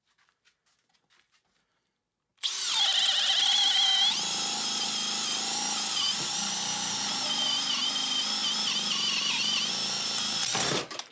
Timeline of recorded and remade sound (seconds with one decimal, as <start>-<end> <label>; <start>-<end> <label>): 0.0-11.1 recorded